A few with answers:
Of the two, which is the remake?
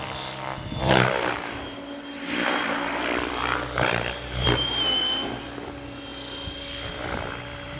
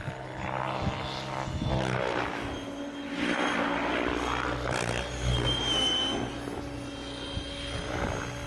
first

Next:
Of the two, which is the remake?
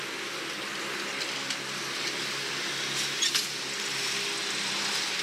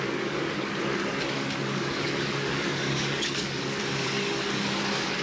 second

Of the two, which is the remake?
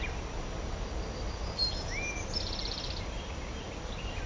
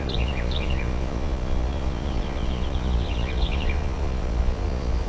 second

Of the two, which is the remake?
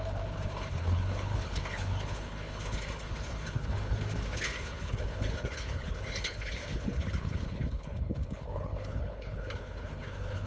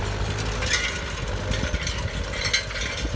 first